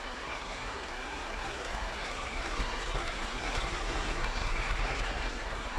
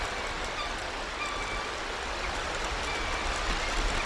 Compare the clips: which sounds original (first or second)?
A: second